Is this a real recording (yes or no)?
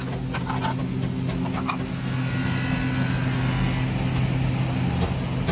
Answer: yes